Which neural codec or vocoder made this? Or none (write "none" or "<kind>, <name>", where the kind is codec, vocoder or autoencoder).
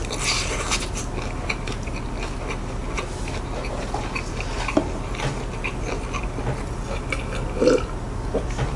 none